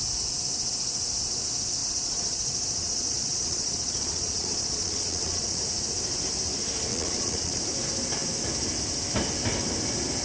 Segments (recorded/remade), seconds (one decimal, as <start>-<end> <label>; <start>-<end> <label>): 0.0-1.8 recorded; 1.8-5.6 remade; 5.6-6.9 recorded; 6.9-7.6 remade; 7.6-10.2 recorded